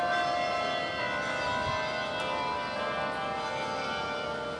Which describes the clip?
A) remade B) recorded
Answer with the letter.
B